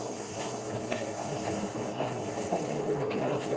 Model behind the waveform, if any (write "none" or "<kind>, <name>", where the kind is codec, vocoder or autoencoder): codec, SNAC